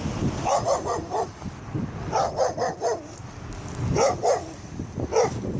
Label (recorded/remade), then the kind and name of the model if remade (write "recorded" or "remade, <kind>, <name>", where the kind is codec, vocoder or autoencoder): recorded